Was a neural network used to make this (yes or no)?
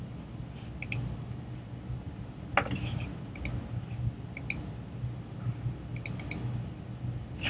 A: no